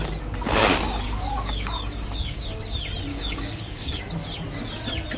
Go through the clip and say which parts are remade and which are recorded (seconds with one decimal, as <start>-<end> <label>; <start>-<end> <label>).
0.0-0.7 recorded; 0.7-2.6 remade; 2.6-3.1 recorded; 3.1-4.0 remade; 4.0-5.2 recorded